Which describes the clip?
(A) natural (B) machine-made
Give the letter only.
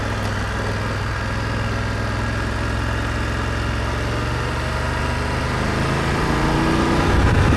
A